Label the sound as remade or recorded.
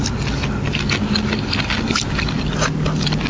recorded